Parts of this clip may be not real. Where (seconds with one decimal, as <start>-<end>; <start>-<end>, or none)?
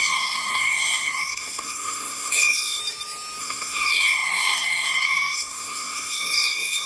0.0-2.8; 3.4-6.9